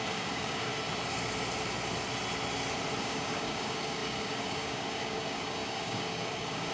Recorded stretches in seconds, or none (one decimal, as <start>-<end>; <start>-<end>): 0.7-3.0